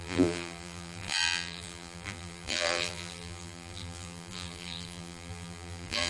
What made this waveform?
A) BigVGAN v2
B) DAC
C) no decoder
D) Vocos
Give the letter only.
A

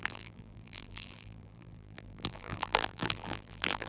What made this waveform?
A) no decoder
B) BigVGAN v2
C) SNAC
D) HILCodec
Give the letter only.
B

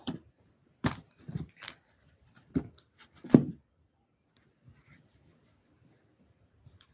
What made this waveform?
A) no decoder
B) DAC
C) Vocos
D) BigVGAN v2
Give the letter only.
D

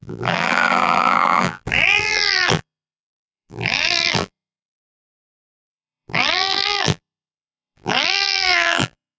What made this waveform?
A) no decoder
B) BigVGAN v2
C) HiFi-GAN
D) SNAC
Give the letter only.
B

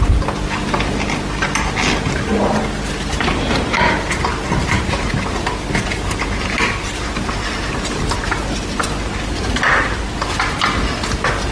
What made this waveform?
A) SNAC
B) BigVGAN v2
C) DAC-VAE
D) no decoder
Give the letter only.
D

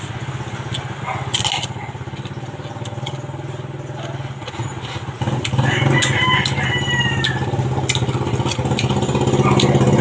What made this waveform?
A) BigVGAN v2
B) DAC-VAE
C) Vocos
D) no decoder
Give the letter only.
D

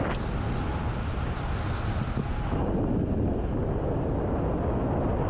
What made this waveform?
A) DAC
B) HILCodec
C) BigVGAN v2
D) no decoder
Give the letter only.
D